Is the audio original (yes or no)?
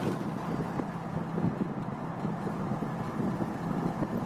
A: yes